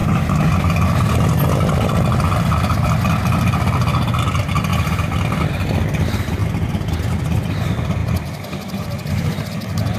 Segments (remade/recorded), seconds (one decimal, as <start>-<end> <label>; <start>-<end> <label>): 0.0-8.0 remade; 8.0-9.1 recorded; 9.1-10.0 remade